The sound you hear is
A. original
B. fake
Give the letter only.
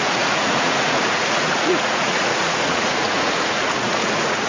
B